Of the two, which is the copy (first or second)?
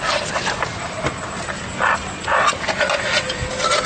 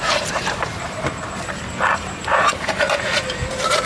second